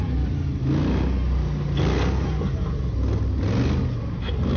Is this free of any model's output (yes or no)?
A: yes